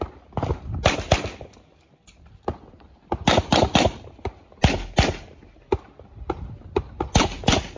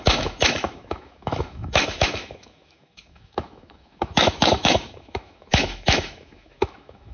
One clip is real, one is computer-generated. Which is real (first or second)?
first